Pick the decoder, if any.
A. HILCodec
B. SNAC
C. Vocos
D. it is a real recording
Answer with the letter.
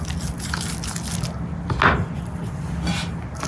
D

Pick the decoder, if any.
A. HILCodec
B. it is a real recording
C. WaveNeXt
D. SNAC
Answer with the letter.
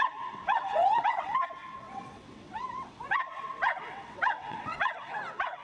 C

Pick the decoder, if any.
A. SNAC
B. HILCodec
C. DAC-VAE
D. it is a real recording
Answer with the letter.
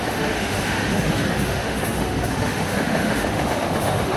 C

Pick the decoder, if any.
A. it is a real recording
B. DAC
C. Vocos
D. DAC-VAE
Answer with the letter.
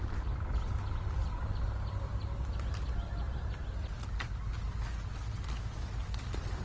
A